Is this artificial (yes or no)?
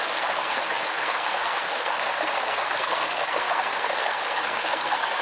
yes